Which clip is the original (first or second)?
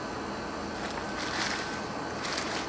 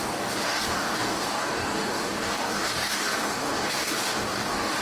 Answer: first